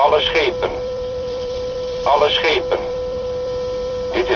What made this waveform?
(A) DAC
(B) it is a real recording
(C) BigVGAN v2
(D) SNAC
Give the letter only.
C